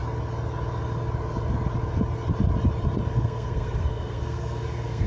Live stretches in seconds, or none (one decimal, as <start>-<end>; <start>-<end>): 0.0-3.1